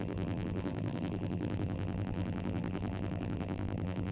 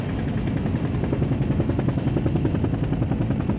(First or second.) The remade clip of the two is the first